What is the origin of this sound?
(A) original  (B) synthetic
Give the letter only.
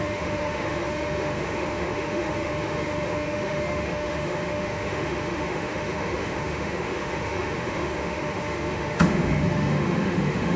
B